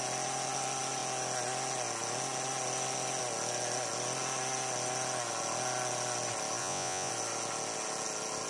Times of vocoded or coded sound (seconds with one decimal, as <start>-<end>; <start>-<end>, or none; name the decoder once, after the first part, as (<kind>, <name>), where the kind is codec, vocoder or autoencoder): 6.6-7.1 (vocoder, Vocos)